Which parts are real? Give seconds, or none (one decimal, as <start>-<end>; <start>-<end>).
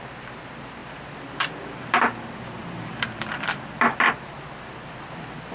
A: 0.0-0.8; 4.1-5.5